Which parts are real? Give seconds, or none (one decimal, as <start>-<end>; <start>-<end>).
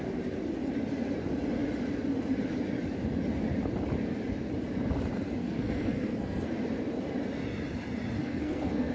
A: 0.0-5.4; 6.5-8.2